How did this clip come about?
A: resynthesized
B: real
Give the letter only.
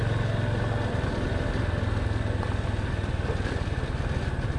B